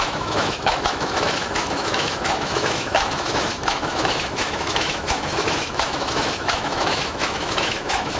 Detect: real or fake fake